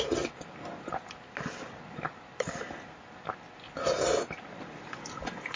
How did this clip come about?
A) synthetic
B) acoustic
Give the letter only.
B